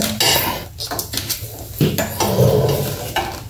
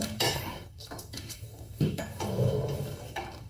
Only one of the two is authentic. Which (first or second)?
first